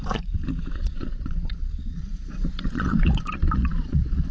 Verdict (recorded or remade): remade